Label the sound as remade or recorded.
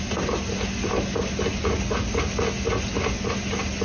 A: recorded